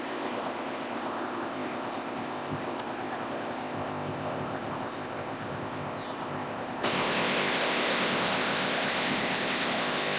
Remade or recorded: remade